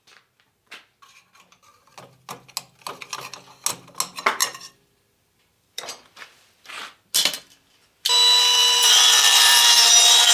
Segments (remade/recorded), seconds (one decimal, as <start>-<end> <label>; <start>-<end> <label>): 0.0-4.4 recorded; 4.4-5.9 remade; 5.9-8.6 recorded; 8.6-10.3 remade